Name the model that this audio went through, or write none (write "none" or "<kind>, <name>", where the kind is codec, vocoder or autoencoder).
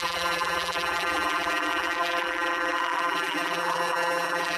vocoder, BigVGAN v2